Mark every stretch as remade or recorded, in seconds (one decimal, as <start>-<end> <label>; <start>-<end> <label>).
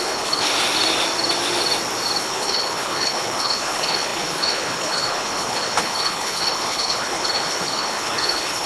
0.0-0.5 remade; 0.5-2.2 recorded; 2.2-8.7 remade